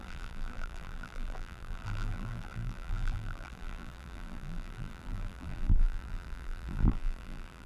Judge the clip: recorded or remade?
remade